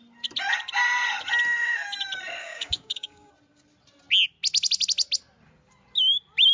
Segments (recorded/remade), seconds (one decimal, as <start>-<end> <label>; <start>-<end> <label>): 0.0-2.4 recorded; 2.4-3.3 remade; 3.3-6.5 recorded